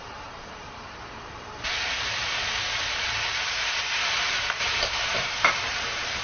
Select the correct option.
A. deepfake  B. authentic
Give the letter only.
A